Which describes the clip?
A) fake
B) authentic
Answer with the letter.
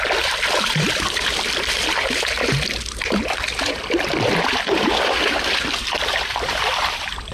A